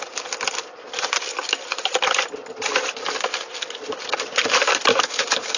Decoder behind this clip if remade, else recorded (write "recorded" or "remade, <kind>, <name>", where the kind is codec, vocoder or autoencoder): recorded